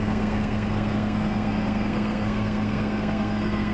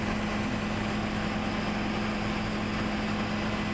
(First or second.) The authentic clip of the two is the second